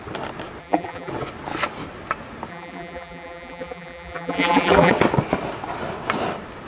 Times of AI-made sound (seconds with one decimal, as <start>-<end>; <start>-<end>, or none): 0.6-1.1; 2.5-4.9